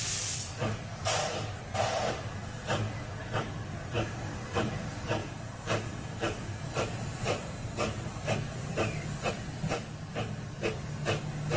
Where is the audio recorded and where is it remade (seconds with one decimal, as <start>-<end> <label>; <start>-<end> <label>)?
0.0-5.2 recorded; 5.2-9.3 remade; 9.3-11.6 recorded